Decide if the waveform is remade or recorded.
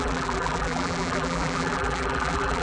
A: remade